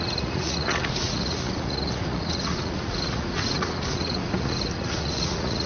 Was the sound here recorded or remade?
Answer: remade